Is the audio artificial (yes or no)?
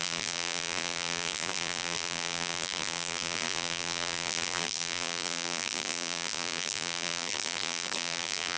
yes